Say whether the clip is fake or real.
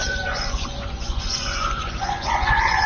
fake